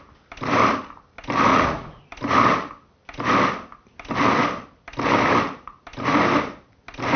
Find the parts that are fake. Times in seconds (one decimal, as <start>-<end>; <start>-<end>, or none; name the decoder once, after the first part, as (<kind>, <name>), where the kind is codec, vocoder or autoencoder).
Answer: 1.5-2.0 (vocoder, Vocos)

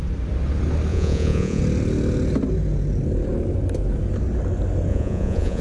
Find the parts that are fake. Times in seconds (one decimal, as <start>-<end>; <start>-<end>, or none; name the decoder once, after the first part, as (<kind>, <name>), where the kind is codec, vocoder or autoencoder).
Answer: 0.9-1.6 (vocoder, Vocos); 4.9-5.6

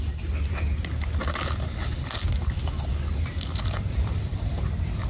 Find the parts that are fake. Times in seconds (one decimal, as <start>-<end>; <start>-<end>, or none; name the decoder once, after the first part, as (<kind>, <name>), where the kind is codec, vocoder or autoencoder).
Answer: none

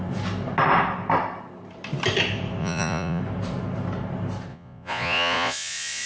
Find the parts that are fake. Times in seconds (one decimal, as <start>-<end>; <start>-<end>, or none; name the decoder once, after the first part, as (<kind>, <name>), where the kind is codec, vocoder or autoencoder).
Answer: 2.6-3.2 (vocoder, Vocos); 4.5-6.1